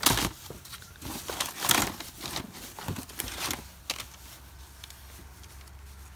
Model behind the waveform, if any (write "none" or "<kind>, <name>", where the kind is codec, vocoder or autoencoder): none